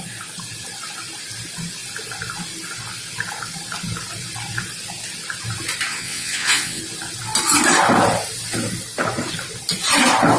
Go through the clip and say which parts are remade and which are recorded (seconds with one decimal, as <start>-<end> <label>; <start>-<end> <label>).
0.0-5.9 recorded; 5.9-6.8 remade; 6.8-10.4 recorded